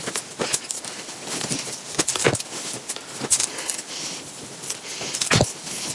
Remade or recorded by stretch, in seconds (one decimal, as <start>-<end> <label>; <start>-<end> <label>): 0.0-5.9 recorded